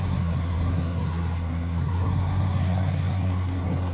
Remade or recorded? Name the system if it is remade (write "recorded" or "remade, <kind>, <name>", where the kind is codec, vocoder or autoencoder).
remade, codec, SNAC